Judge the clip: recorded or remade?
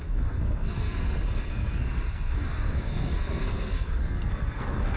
remade